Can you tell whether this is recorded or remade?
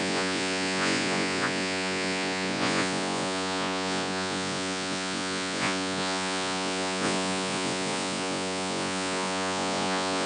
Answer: remade